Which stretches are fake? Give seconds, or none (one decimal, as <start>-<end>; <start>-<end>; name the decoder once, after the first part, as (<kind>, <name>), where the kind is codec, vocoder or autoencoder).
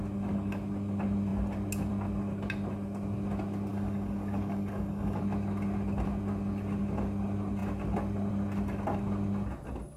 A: 3.7-5.2 (codec, DAC)